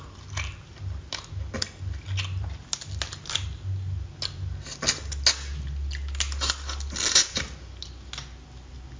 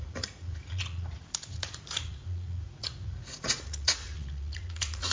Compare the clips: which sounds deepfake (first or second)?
second